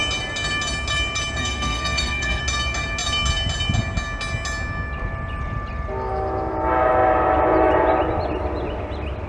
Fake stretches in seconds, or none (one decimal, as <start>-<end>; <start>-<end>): 1.4-2.4